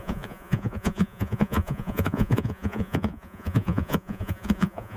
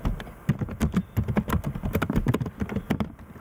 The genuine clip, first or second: second